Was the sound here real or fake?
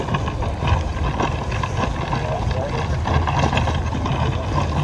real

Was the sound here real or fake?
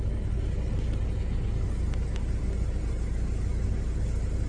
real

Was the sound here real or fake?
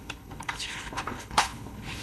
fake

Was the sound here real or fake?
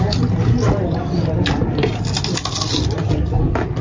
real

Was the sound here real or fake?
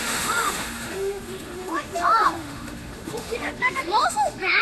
fake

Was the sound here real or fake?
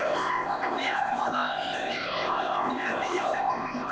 fake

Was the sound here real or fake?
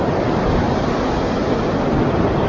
real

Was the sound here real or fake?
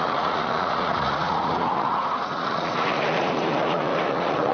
fake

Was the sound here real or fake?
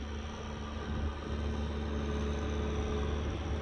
real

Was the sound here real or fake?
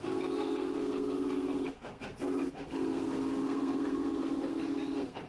fake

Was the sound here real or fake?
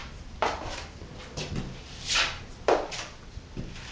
fake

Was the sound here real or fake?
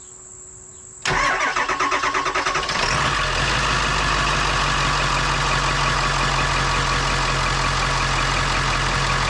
real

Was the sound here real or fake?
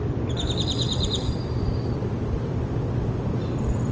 fake